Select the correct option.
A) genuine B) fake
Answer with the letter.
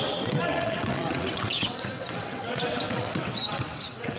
B